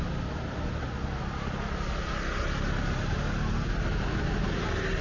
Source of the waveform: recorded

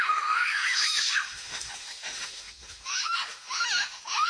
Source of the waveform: remade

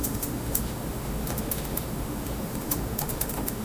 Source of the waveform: remade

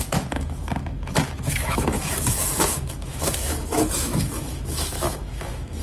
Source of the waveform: remade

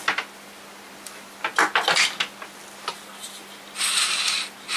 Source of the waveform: recorded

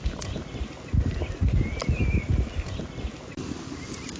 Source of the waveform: recorded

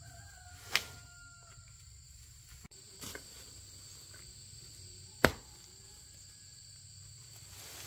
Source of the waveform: recorded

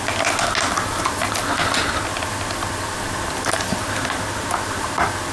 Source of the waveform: recorded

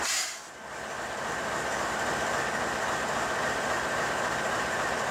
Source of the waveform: recorded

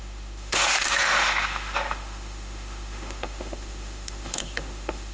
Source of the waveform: remade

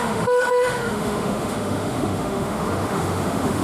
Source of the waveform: remade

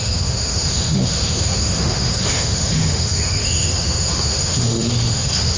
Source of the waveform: remade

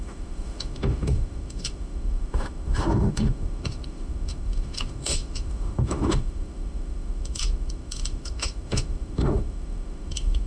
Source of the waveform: remade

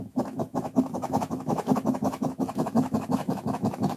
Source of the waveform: remade